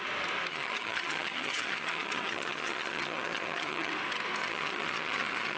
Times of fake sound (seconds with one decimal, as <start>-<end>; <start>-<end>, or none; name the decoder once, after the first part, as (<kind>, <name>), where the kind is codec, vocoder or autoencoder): 0.5-3.9 (vocoder, HiFi-GAN); 4.4-5.6